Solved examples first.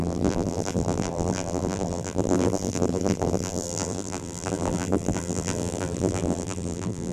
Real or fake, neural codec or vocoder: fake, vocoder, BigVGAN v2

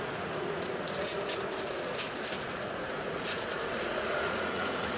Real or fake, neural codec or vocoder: fake, vocoder, Vocos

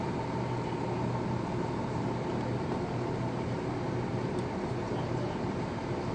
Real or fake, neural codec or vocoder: real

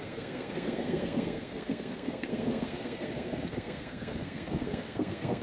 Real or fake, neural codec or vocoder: fake, codec, SNAC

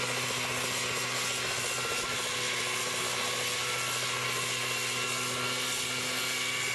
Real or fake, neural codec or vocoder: real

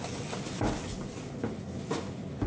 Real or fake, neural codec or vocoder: real